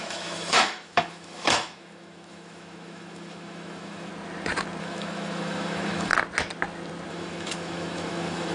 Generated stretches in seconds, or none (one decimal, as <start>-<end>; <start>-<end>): 0.0-4.1; 4.8-6.1; 7.1-8.5